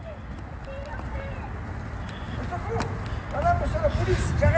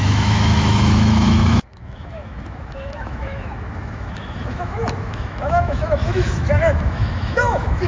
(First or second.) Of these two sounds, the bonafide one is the first